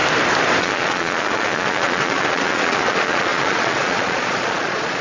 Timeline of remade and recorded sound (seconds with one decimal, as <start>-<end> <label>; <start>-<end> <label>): 0.0-0.6 recorded; 0.6-5.0 remade